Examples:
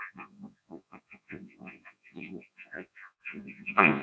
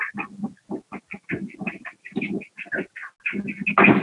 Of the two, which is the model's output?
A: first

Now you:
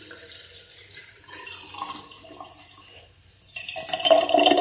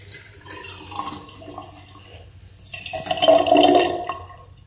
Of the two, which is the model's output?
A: first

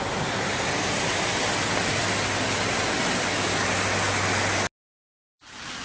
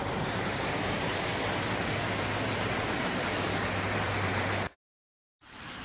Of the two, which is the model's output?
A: second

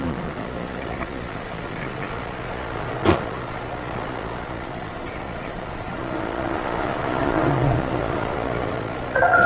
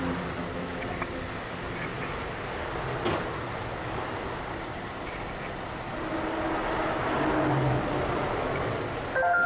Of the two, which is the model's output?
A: first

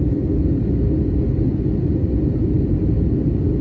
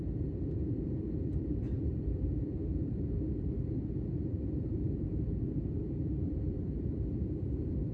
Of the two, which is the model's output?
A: second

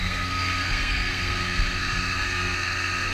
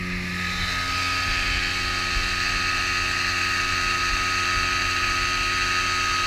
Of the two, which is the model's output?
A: first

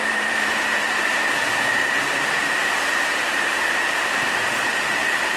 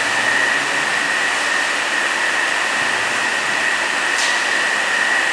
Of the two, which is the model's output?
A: first